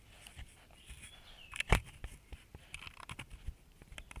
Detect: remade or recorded recorded